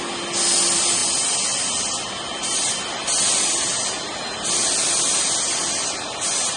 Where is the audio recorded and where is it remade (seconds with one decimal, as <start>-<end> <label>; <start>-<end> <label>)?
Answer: 0.0-6.6 recorded